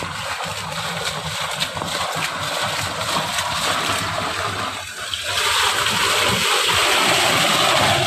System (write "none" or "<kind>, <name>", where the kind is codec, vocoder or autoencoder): none